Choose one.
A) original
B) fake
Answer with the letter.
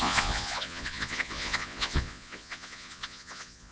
B